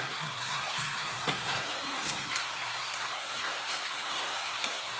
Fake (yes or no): yes